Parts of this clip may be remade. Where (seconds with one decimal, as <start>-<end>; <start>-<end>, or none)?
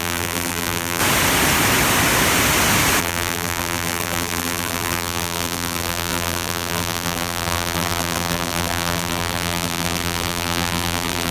0.0-1.0; 3.0-11.3